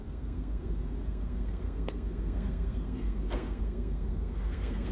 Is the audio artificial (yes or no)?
yes